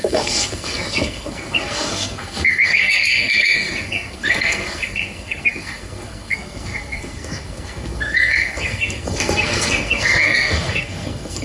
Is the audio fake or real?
fake